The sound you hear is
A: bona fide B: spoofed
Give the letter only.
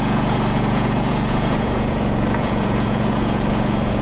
B